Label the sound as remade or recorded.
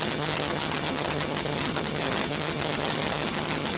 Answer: remade